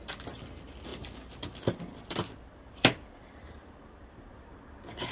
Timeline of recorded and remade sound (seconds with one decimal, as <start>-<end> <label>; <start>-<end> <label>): 0.0-0.9 remade; 0.9-1.8 recorded; 1.8-5.1 remade